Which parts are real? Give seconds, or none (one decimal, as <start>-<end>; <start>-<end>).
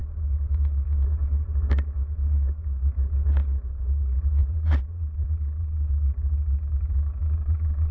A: 0.0-4.4; 5.9-7.2